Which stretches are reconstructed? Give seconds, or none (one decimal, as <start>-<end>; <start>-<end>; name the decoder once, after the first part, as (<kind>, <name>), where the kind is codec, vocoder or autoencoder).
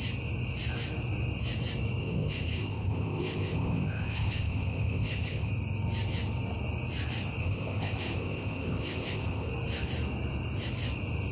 2.0-5.5 (codec, ZipCodec); 7.4-9.5